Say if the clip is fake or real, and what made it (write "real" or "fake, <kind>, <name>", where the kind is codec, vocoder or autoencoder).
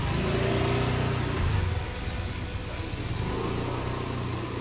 real